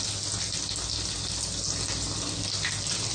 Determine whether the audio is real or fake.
real